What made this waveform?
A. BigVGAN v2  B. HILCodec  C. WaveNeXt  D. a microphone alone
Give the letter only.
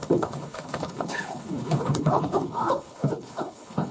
B